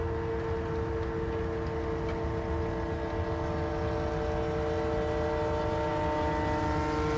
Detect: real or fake real